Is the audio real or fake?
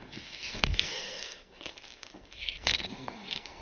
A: fake